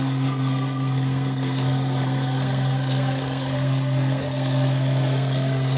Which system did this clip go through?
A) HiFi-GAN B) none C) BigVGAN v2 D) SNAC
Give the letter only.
D